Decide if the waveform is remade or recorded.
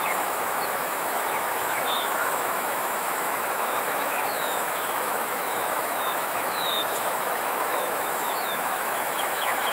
remade